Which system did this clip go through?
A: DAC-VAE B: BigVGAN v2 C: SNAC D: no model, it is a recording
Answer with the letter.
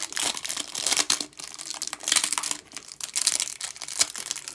D